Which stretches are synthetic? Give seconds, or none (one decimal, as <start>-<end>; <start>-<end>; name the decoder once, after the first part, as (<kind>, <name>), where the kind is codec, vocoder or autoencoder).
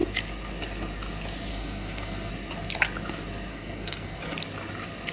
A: 1.5-2.3 (codec, SNAC); 3.5-4.2